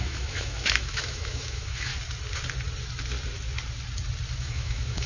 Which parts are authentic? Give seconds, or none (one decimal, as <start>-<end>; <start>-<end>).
1.9-4.4

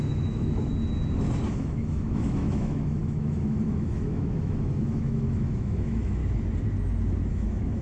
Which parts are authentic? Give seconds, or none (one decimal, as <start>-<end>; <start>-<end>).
0.7-1.5; 6.2-7.3

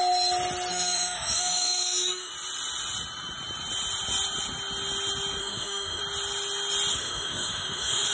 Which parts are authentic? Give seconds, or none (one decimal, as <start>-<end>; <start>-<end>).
0.0-0.7; 2.3-5.4; 6.0-6.9

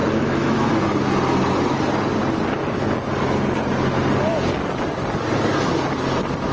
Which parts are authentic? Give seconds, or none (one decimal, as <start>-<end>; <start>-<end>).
0.7-6.5

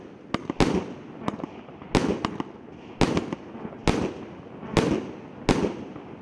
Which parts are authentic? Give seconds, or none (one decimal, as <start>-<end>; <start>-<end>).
0.0-6.2

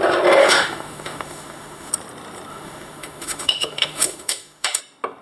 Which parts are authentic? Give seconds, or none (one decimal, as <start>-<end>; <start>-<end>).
0.0-0.4; 1.9-2.5; 4.8-5.2

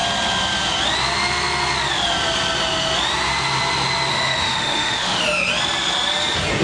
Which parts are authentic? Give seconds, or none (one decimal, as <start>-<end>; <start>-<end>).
0.0-4.1; 5.2-6.6